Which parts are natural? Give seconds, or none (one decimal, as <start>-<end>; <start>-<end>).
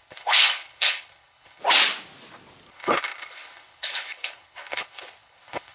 1.6-2.7